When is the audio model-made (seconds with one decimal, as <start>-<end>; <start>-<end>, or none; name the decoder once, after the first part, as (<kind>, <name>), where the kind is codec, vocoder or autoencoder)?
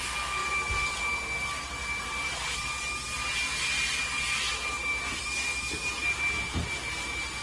none